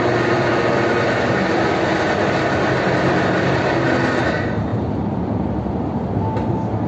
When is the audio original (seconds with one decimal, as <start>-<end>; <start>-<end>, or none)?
0.0-4.7; 5.6-6.9